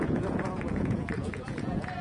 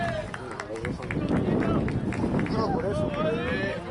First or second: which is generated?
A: first